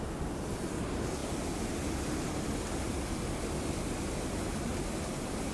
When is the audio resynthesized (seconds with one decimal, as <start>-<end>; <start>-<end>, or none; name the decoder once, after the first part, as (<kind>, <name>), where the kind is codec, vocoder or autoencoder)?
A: 1.2-1.9 (vocoder, BigVGAN v2)